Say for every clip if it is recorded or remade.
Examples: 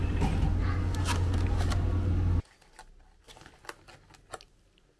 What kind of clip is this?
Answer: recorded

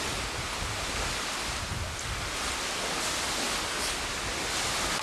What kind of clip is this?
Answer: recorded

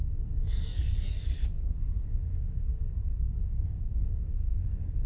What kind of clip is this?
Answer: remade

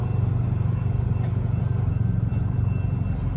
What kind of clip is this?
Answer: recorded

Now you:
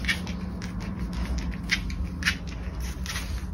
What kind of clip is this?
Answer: recorded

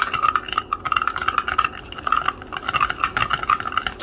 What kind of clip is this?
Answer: recorded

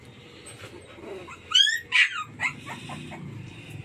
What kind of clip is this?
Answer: recorded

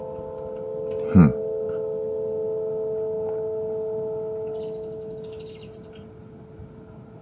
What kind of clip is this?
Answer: recorded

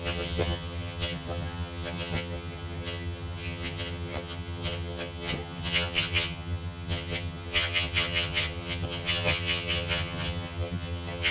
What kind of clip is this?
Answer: remade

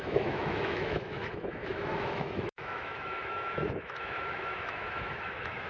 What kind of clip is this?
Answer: remade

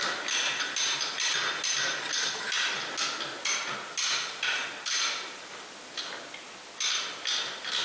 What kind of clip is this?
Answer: recorded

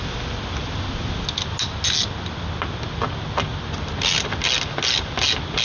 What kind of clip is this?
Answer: recorded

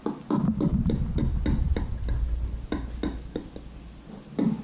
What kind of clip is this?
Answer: recorded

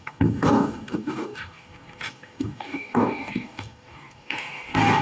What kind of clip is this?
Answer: remade